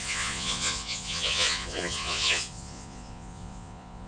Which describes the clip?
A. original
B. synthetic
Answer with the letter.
B